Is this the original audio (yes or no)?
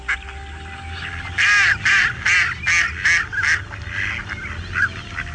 yes